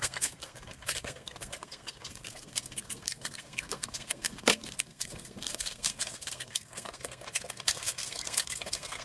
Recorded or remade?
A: remade